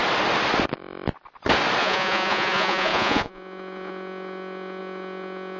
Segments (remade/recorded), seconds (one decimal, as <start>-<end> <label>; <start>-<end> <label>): 0.0-1.8 recorded; 1.8-5.6 remade